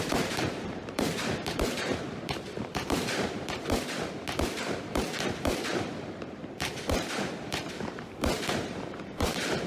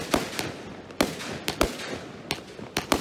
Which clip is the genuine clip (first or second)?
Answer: second